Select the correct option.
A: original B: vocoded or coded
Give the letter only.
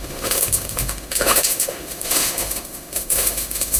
B